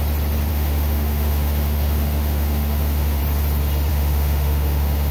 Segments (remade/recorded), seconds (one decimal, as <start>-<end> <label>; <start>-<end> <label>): 0.0-0.5 recorded; 0.5-3.2 remade; 3.2-3.9 recorded; 3.9-5.1 remade